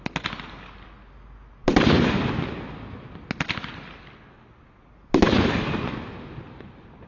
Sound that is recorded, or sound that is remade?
recorded